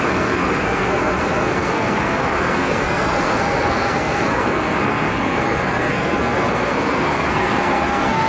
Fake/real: fake